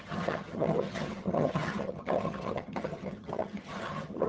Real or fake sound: fake